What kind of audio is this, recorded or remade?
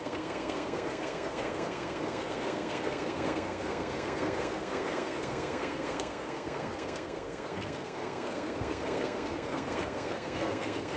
remade